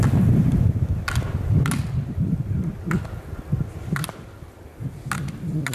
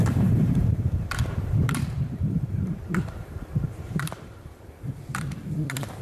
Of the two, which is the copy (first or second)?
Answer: second